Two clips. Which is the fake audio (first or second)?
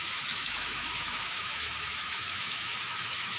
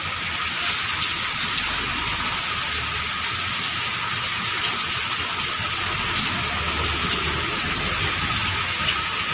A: first